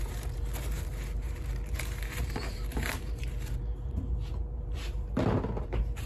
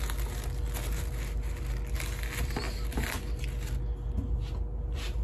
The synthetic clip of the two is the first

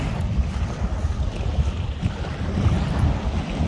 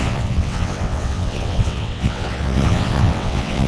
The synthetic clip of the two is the second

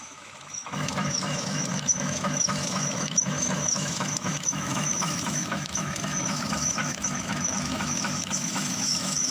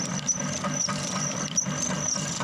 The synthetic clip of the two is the first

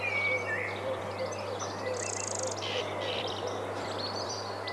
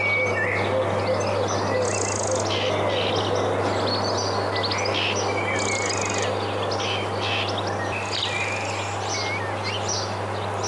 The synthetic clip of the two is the first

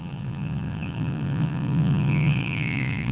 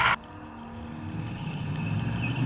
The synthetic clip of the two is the first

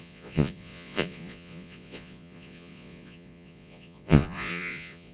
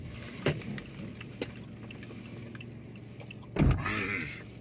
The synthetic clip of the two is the first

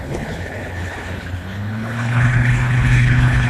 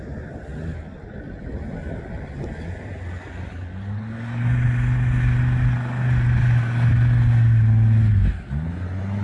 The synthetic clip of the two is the first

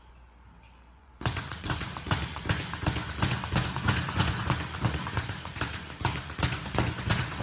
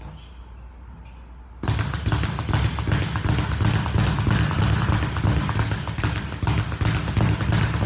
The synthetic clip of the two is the first